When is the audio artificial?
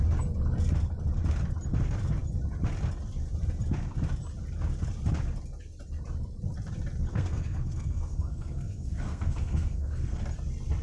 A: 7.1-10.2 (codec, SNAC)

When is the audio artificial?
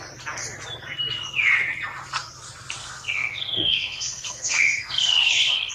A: 2.8-5.7 (codec, SNAC)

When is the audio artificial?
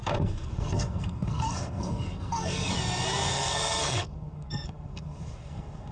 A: 0.0-2.7 (codec, SNAC); 3.3-5.9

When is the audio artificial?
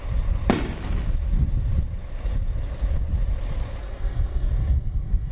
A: 3.8-5.3 (codec, SNAC)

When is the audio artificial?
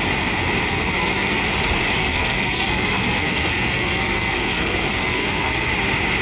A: 0.7-1.4 (codec, SNAC); 2.0-5.7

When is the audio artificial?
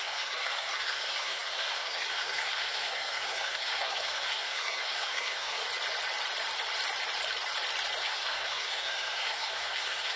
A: 0.0-5.6 (codec, SNAC); 8.0-10.2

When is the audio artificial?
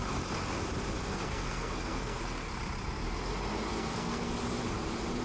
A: 1.0-2.2 (codec, SNAC); 3.7-4.3